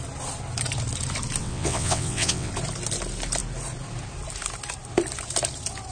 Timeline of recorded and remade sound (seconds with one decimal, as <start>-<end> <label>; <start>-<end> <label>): 0.0-1.4 recorded; 1.4-2.5 remade; 2.5-5.9 recorded